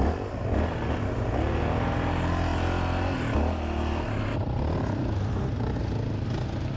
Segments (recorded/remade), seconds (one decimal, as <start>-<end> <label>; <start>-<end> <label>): 0.0-6.8 recorded